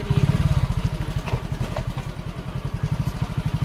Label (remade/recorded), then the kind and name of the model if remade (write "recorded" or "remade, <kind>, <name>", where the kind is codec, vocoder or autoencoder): recorded